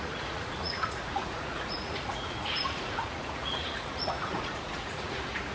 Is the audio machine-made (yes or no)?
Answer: yes